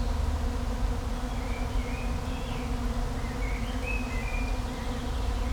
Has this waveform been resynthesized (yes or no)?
no